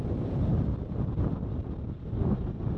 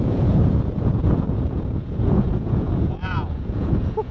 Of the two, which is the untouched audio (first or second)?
first